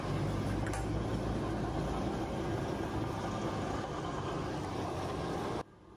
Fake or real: real